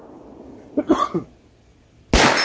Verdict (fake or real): real